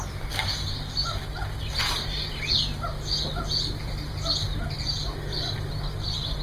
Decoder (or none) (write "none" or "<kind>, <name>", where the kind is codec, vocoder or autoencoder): none